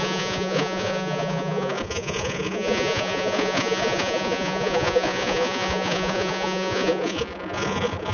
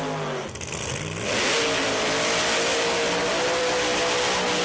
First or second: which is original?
second